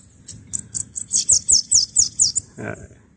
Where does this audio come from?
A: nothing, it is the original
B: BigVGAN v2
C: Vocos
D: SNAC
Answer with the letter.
A